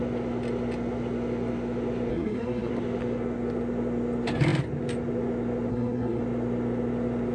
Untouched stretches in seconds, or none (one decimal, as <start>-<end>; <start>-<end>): 0.0-2.1; 2.7-5.7; 6.2-7.3